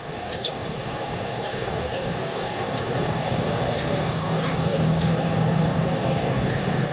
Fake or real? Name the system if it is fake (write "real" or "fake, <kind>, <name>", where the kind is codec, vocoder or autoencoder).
fake, codec, DAC